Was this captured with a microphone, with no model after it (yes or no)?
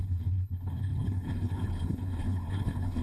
no